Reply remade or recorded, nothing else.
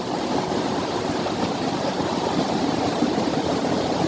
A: remade